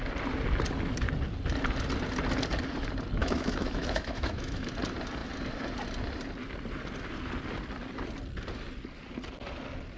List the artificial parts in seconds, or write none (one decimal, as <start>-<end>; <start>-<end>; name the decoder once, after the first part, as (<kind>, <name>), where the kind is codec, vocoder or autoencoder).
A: 3.2-4.7 (autoencoder, DAC-VAE)